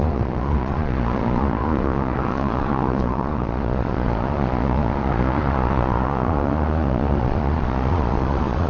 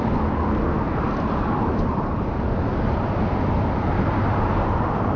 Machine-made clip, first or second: first